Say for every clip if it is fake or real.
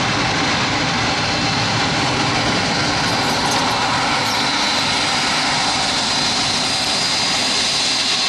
real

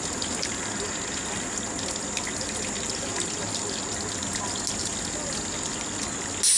real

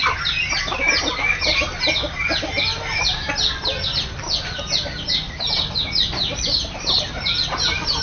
real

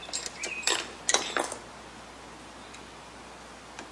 real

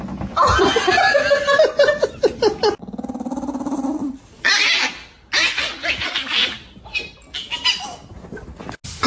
real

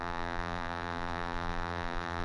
fake